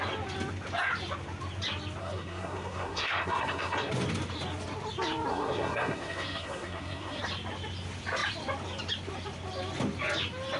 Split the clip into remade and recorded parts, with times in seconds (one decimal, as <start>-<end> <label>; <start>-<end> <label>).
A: 0.0-2.0 recorded; 2.0-3.9 remade; 3.9-5.3 recorded; 5.3-7.2 remade; 7.2-10.6 recorded